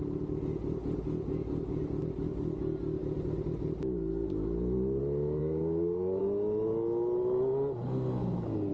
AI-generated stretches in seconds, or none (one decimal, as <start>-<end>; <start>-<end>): 5.4-6.2